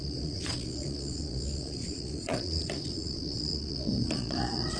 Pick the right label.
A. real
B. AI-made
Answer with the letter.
B